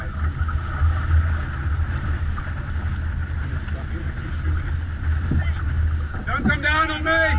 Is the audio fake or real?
real